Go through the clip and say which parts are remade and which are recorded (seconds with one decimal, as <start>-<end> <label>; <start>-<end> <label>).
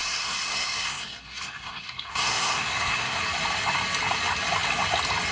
0.0-3.2 remade; 3.2-5.3 recorded